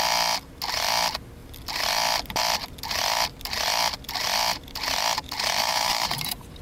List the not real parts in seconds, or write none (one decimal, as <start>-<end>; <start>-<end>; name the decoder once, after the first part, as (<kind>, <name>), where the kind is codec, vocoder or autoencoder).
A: 5.6-6.6 (vocoder, BigVGAN v2)

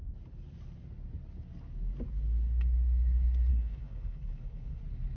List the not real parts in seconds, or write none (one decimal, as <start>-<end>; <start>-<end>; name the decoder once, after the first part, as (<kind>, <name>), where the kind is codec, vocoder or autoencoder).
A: 3.5-4.8 (codec, HILCodec)

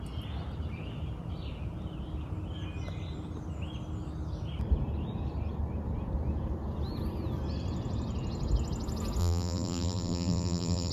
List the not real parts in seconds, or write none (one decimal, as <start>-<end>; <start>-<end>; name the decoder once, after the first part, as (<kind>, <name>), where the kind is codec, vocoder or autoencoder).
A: 9.2-10.9 (vocoder, BigVGAN v2)